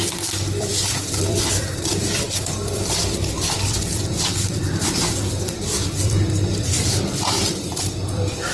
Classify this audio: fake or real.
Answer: fake